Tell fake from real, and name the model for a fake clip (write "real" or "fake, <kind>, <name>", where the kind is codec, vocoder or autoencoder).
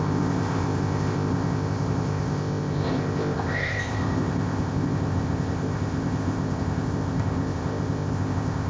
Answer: fake, codec, ZipCodec